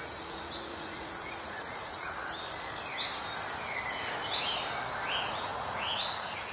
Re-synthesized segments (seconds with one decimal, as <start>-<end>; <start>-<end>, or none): 0.0-2.2; 5.3-6.5